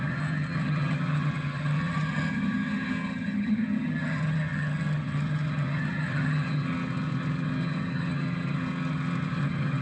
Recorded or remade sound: remade